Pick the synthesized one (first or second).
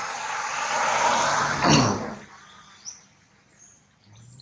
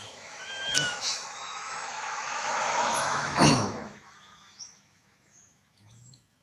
second